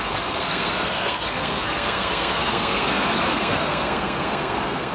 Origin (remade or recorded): remade